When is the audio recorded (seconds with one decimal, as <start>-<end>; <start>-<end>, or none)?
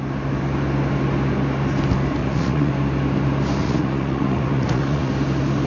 0.0-2.2; 2.7-3.6; 5.1-5.7